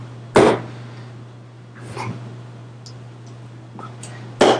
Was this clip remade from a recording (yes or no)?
no